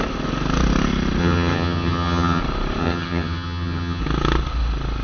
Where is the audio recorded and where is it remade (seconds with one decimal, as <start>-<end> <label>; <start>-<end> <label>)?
0.0-1.2 recorded; 1.2-2.4 remade; 2.4-2.8 recorded; 2.8-4.0 remade; 4.0-5.0 recorded

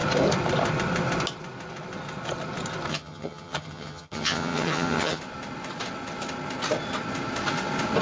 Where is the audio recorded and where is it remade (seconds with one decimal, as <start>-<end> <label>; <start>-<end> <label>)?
0.0-2.9 recorded; 2.9-5.2 remade; 5.2-8.0 recorded

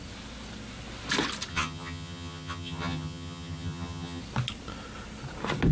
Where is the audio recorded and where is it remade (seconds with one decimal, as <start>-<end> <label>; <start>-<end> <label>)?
0.0-1.5 recorded; 1.5-4.2 remade; 4.2-5.7 recorded

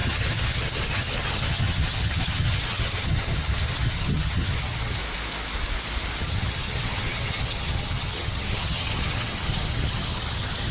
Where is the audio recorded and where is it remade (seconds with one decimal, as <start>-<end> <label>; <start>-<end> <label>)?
0.0-5.0 remade; 5.0-6.2 recorded; 6.2-10.7 remade

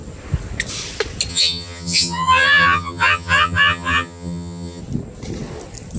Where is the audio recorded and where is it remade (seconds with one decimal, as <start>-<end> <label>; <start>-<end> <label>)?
0.0-1.3 recorded; 1.3-4.8 remade; 4.8-6.0 recorded

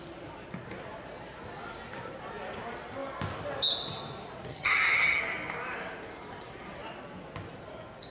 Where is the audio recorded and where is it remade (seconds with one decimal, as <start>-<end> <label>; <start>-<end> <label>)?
0.0-4.5 recorded; 4.5-5.2 remade; 5.2-8.1 recorded

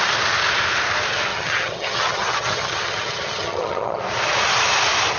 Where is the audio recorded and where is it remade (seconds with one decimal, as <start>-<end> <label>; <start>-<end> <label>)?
0.0-1.3 recorded; 1.3-4.0 remade; 4.0-5.2 recorded